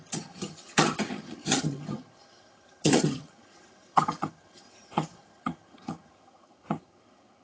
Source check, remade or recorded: remade